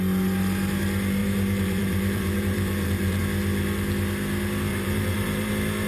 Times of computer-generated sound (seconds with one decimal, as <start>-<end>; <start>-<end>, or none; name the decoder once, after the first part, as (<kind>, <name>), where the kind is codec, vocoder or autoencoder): 1.2-3.2 (vocoder, BigVGAN v2); 4.7-5.5